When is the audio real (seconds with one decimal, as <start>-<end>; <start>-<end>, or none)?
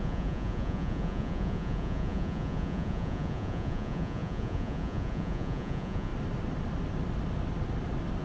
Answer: 6.1-8.2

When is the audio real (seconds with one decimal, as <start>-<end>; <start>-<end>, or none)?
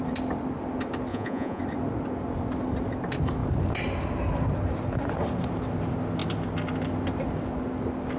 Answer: 0.0-1.1; 1.6-8.2